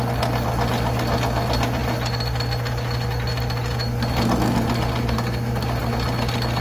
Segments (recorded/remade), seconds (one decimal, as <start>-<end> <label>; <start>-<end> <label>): 0.0-6.6 recorded